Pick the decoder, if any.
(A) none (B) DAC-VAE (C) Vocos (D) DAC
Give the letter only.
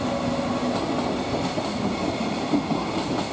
A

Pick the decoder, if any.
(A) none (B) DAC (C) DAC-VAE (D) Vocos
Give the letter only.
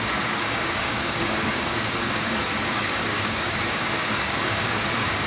B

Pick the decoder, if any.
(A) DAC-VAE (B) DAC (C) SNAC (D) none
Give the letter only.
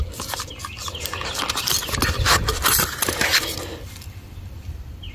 D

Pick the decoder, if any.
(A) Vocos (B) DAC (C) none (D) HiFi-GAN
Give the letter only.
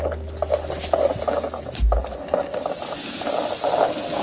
C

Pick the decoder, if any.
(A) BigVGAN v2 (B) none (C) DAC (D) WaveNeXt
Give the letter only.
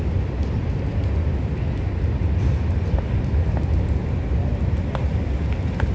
B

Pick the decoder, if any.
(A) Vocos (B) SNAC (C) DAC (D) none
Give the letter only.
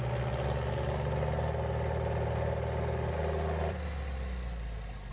D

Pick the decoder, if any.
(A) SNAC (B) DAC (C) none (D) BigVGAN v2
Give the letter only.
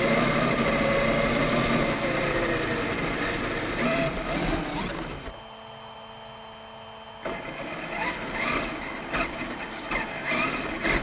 C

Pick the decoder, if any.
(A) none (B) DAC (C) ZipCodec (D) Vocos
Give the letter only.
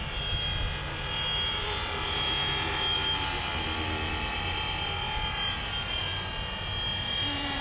A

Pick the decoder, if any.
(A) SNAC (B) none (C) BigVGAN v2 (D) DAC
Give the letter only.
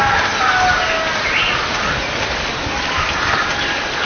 B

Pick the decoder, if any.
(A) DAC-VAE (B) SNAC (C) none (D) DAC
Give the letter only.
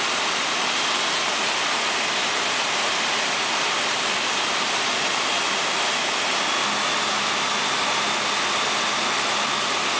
C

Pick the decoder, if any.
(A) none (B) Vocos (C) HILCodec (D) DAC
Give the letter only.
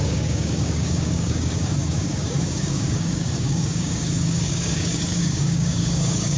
D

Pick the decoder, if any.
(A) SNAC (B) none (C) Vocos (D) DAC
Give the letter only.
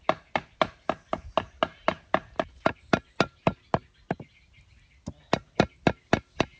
B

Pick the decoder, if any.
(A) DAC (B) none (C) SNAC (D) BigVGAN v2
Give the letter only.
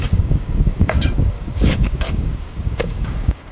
A